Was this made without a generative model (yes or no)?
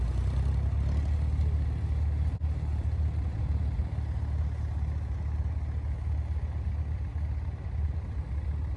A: yes